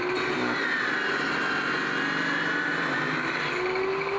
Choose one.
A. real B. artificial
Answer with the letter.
A